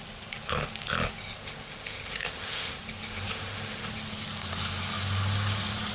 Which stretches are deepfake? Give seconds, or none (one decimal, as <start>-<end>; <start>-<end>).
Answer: 1.4-2.8; 3.3-3.9